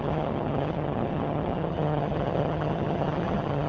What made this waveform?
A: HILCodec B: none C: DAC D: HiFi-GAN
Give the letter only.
D